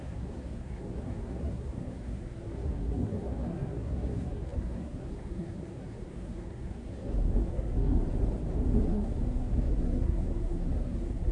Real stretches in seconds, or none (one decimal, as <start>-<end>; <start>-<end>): 8.0-8.6